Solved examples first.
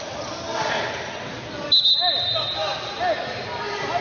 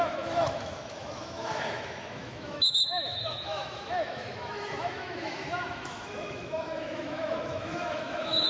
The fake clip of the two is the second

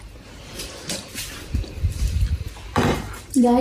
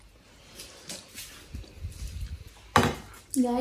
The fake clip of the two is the first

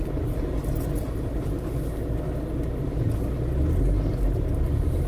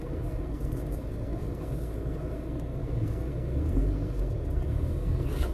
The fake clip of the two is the second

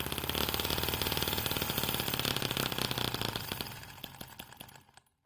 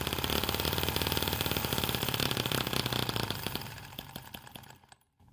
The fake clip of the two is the second